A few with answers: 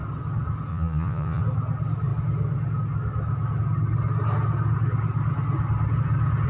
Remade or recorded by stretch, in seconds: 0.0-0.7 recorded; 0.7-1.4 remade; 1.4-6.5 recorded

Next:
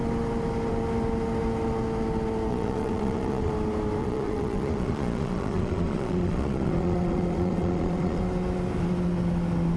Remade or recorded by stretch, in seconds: 0.0-2.5 recorded; 2.5-3.5 remade; 3.5-4.0 recorded; 4.0-8.2 remade; 8.2-9.8 recorded